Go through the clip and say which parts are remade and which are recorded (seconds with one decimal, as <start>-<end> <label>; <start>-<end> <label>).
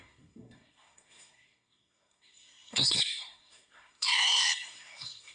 0.0-5.3 remade